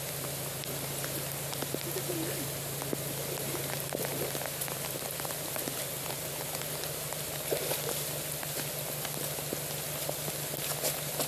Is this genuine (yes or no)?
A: yes